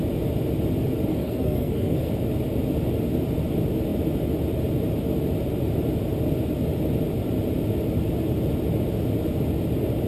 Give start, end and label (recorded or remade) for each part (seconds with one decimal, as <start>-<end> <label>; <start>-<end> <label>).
0.0-1.1 recorded; 1.1-2.1 remade; 2.1-10.1 recorded